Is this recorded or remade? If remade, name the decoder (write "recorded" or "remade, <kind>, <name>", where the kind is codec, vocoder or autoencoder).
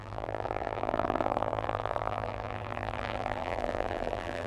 remade, vocoder, BigVGAN v2